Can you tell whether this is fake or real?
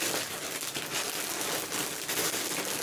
real